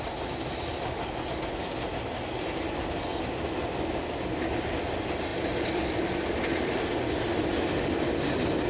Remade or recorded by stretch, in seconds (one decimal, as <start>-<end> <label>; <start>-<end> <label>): 0.0-8.7 recorded